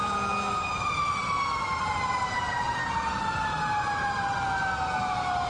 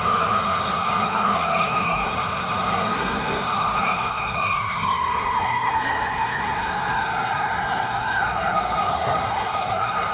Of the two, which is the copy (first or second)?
second